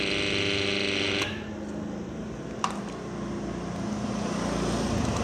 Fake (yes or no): no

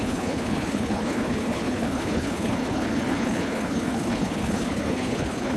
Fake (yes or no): yes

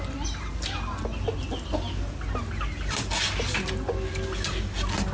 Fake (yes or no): no